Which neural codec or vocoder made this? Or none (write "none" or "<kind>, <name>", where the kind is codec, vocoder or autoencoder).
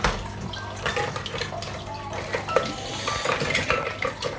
none